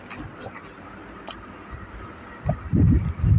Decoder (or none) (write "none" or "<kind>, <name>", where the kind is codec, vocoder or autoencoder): none